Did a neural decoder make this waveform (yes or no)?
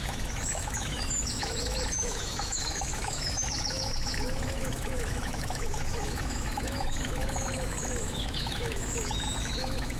yes